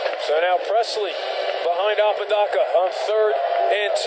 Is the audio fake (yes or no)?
no